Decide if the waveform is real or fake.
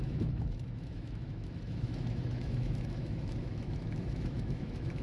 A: fake